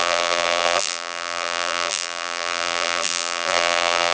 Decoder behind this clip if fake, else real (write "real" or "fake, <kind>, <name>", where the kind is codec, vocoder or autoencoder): fake, vocoder, BigVGAN v2